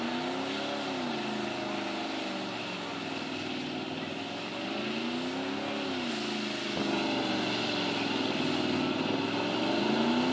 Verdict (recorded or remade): recorded